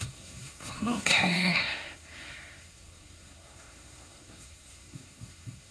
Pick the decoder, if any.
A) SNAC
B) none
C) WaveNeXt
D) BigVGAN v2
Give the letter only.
A